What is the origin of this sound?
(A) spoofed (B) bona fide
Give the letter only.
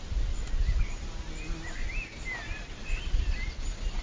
B